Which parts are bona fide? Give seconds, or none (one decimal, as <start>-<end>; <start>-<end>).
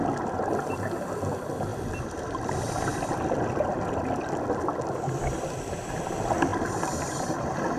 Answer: 0.0-7.8